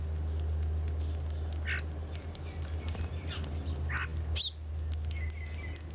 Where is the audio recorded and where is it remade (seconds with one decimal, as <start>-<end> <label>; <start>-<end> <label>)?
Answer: 0.0-5.9 recorded

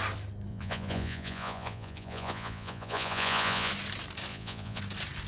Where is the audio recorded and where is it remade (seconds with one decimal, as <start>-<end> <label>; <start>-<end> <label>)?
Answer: 0.0-0.5 recorded; 0.5-3.7 remade; 3.7-4.3 recorded; 4.3-4.8 remade; 4.8-5.3 recorded

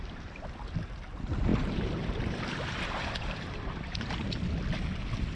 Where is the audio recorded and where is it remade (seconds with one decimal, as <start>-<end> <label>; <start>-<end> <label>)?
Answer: 0.0-1.5 recorded; 1.5-4.1 remade; 4.1-5.3 recorded

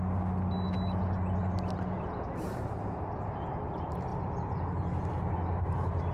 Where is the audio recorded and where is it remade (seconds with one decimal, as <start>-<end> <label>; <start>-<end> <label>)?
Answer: 0.0-6.1 recorded

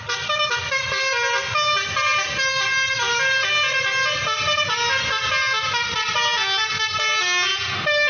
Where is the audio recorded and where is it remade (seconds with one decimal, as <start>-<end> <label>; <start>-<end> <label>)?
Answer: 0.0-8.1 recorded

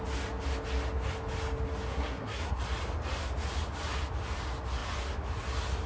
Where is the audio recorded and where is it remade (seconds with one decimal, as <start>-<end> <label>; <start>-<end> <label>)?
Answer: 0.0-1.9 recorded; 1.9-2.6 remade; 2.6-5.9 recorded

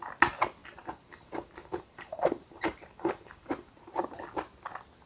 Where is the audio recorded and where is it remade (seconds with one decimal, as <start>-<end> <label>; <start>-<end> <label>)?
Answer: 0.0-0.6 recorded; 0.6-3.7 remade; 3.7-5.1 recorded

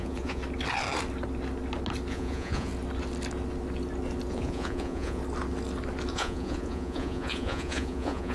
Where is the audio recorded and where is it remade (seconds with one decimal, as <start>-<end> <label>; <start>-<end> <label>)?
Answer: 0.0-0.4 remade; 0.4-2.1 recorded; 2.1-2.7 remade; 2.7-4.3 recorded; 4.3-5.2 remade; 5.2-6.1 recorded; 6.1-8.3 remade